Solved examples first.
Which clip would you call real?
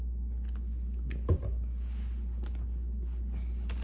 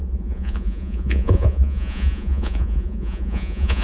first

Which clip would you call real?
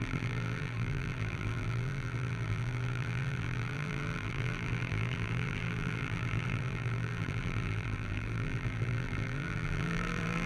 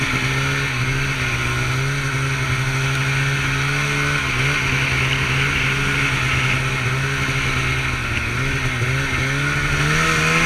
second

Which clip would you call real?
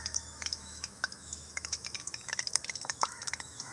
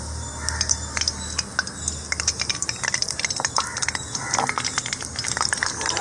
second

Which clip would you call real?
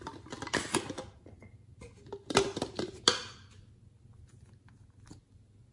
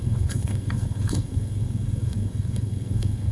first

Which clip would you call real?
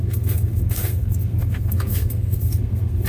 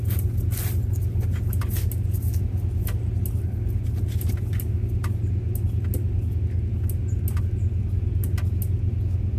second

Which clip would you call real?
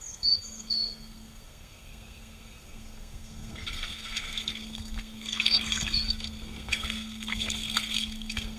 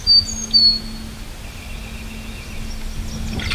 second